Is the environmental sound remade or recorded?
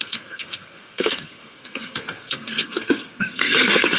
remade